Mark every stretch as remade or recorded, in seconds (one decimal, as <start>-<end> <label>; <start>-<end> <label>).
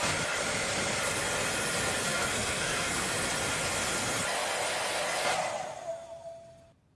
0.0-2.0 recorded; 2.0-3.1 remade; 3.1-7.0 recorded